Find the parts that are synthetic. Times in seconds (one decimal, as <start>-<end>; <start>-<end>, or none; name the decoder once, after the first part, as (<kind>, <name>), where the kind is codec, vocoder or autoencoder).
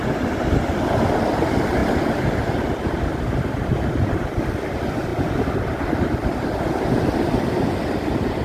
0.0-1.8 (vocoder, BigVGAN v2); 2.8-8.4